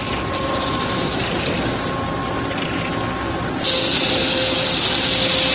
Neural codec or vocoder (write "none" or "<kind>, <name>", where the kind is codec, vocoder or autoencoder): none